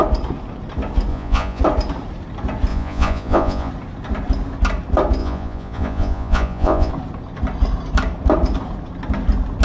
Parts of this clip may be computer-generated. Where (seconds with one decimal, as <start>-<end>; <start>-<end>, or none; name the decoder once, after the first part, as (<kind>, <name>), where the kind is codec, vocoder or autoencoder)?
1.1-1.6 (vocoder, Vocos); 2.7-3.7; 5.2-6.9